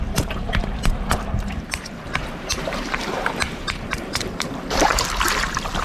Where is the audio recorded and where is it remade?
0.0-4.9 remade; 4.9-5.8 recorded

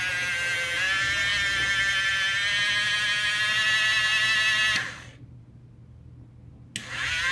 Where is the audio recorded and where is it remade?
0.0-7.3 recorded

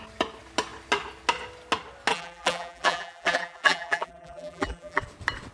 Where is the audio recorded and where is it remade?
0.0-2.1 recorded; 2.1-5.0 remade; 5.0-5.5 recorded

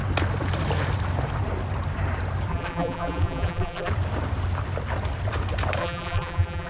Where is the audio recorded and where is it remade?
0.0-2.5 recorded; 2.5-3.9 remade; 3.9-5.8 recorded; 5.8-6.7 remade

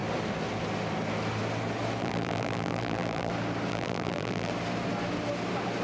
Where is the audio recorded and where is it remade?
0.0-2.0 recorded; 2.0-3.3 remade; 3.3-3.7 recorded; 3.7-4.5 remade; 4.5-5.8 recorded